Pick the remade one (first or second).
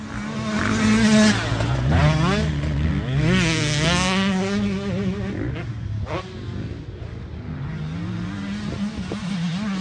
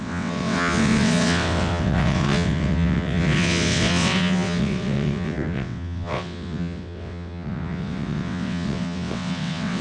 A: second